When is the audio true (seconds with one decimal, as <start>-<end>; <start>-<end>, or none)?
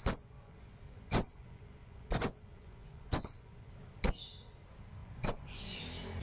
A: 3.7-5.0; 5.8-6.2